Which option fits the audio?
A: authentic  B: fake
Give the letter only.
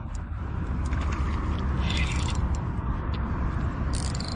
A